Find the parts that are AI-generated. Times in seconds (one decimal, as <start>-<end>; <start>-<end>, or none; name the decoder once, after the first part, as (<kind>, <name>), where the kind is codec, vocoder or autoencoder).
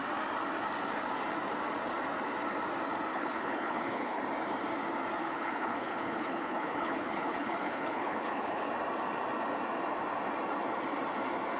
3.1-4.2 (codec, HILCodec); 5.2-8.7